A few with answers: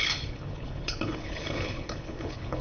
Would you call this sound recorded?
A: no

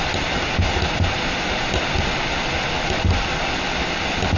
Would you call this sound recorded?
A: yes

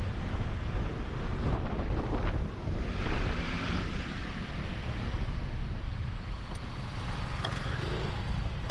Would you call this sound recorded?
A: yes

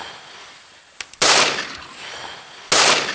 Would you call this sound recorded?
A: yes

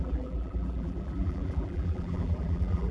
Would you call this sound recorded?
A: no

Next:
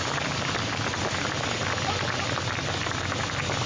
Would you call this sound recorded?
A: yes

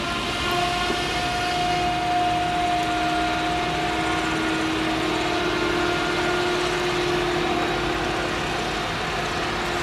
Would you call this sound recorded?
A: yes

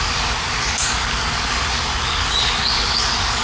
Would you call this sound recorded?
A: no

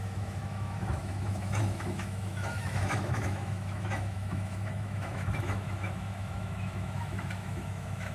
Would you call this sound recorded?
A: no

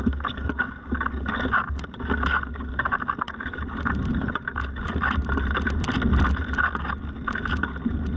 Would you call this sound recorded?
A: yes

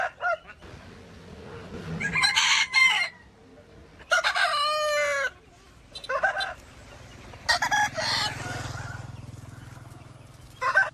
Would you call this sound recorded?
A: yes